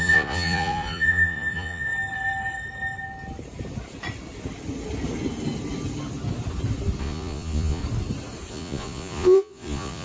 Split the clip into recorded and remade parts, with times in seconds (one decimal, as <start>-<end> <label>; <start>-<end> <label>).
0.0-1.9 remade; 1.9-7.0 recorded; 7.0-7.8 remade; 7.8-8.5 recorded; 8.5-10.0 remade